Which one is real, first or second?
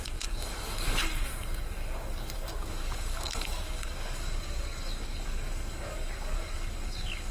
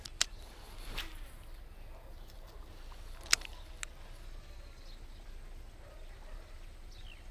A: second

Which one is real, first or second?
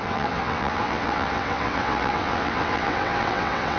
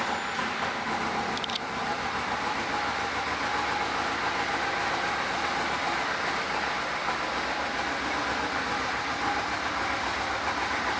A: second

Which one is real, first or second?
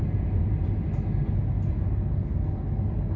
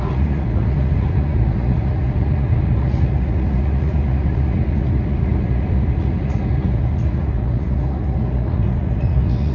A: first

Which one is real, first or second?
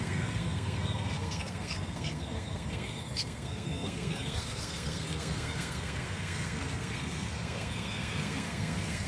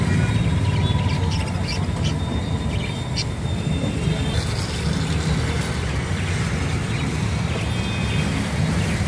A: second